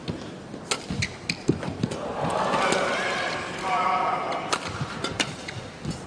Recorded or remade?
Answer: recorded